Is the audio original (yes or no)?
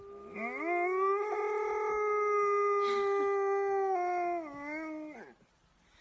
yes